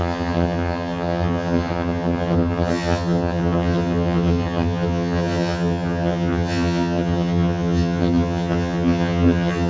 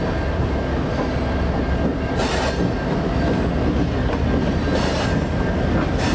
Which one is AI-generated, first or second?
first